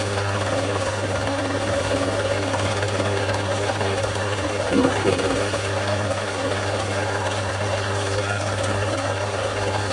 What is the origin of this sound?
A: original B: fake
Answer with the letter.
B